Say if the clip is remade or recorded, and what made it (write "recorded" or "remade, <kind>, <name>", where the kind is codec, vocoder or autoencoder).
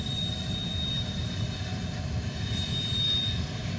recorded